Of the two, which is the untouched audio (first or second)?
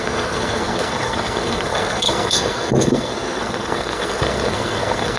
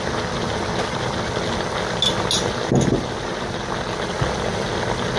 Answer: second